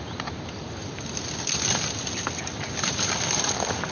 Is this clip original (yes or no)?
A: yes